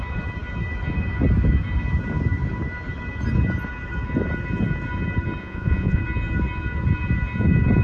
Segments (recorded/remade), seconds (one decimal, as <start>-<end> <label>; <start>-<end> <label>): 0.0-5.4 recorded; 5.4-6.0 remade; 6.0-7.8 recorded